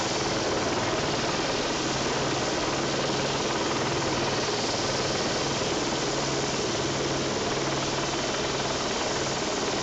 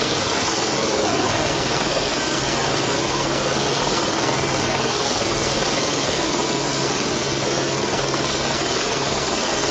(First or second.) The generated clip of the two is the second